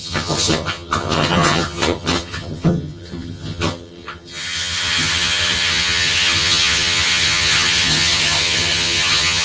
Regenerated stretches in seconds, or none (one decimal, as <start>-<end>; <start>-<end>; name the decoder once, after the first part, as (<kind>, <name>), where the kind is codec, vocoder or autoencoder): 0.0-9.4 (vocoder, HiFi-GAN)